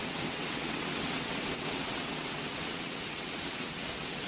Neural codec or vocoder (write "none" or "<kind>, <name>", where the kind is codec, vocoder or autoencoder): vocoder, WaveNeXt